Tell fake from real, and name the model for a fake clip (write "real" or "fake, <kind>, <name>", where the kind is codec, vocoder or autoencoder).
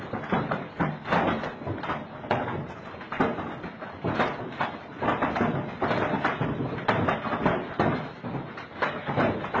real